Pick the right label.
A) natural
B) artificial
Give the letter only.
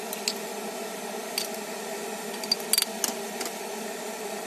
A